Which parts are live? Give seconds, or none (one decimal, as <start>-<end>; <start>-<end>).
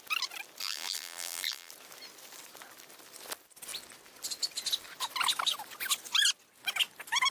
0.0-0.6; 1.7-7.3